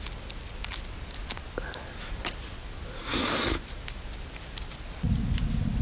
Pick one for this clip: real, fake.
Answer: real